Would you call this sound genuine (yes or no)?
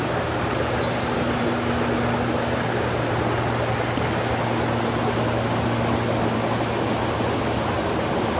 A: yes